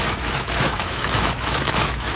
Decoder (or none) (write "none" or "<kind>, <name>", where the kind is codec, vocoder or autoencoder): autoencoder, DAC-VAE